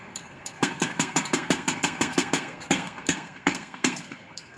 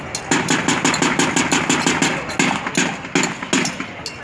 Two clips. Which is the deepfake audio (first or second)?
first